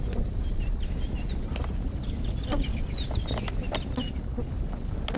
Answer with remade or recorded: recorded